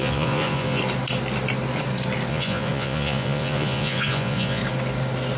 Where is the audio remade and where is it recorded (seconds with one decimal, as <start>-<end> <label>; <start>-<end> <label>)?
0.0-0.8 remade; 0.8-2.3 recorded; 2.3-4.6 remade; 4.6-5.4 recorded